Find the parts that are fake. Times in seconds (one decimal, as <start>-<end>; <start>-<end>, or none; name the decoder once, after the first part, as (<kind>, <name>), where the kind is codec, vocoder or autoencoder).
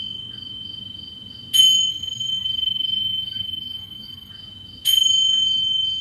1.9-4.3 (codec, SNAC)